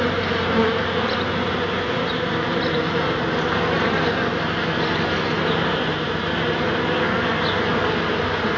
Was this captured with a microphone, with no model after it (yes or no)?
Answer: yes